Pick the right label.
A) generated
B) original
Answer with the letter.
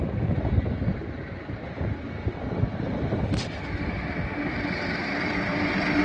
B